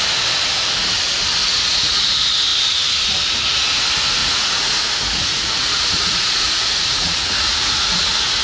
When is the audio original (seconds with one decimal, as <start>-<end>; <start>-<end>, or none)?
0.0-1.4; 2.1-2.5; 3.0-4.2